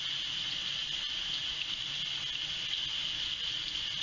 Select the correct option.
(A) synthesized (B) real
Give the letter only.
B